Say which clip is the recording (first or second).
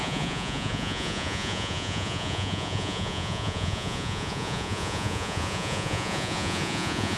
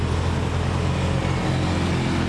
second